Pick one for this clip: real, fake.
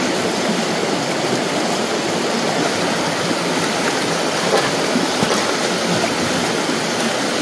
real